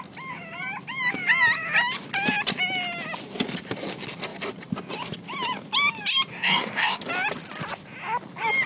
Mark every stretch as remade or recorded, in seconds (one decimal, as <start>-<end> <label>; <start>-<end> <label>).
0.0-6.3 recorded; 6.3-7.0 remade; 7.0-8.7 recorded